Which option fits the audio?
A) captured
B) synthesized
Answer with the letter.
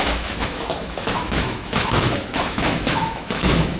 B